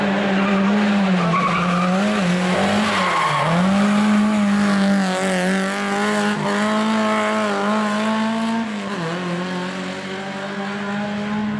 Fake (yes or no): no